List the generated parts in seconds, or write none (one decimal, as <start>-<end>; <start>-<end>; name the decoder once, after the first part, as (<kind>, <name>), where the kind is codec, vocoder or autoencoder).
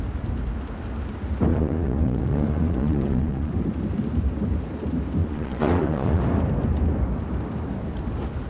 1.5-3.5 (vocoder, Vocos); 5.2-6.2